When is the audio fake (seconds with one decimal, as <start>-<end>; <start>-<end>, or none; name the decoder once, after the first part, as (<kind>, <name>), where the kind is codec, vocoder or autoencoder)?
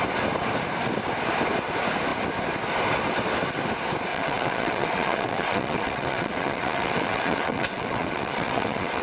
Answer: 4.1-9.0 (vocoder, WaveNeXt)